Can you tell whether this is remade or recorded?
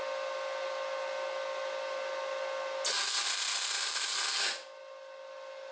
recorded